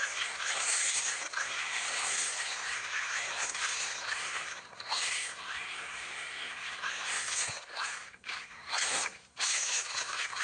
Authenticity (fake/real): fake